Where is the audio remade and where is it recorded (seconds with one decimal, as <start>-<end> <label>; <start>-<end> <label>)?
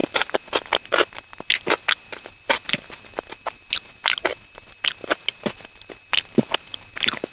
0.0-7.3 recorded